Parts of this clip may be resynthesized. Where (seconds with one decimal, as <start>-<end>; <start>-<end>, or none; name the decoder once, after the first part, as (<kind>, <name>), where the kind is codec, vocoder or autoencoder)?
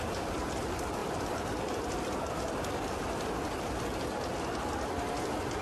none